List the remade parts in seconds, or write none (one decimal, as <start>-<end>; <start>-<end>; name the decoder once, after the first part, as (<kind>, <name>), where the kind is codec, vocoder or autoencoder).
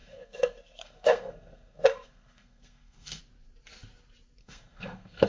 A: 0.0-3.2 (codec, SNAC); 4.4-5.3